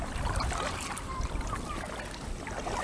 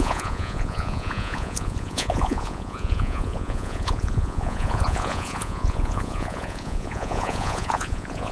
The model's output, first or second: second